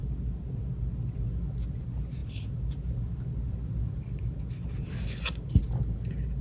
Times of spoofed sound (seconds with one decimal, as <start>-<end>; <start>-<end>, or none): none